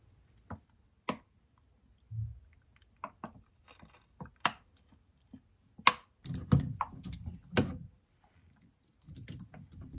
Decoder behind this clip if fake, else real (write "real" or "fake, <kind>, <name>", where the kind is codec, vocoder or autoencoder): real